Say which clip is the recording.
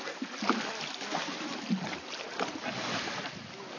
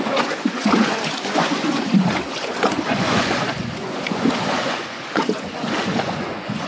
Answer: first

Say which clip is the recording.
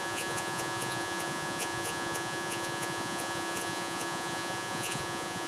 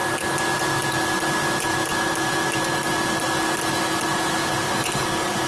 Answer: second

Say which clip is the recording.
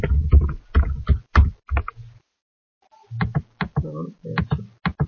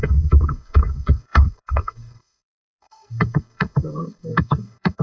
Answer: first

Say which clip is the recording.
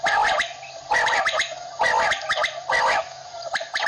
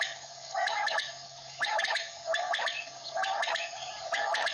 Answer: first